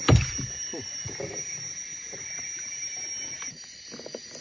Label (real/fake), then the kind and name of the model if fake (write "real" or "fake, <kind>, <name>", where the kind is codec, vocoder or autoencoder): real